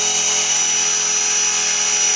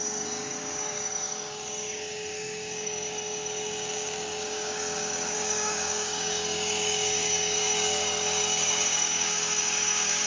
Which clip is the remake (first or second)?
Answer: second